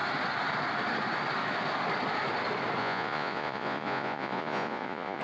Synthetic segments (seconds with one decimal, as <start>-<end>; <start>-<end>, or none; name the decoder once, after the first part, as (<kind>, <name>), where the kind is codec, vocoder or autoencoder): 2.8-5.2 (vocoder, Vocos)